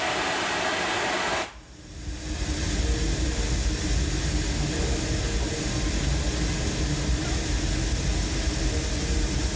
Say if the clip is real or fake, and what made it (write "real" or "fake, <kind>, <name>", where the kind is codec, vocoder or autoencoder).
real